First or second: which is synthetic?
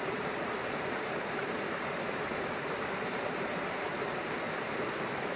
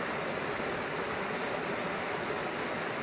first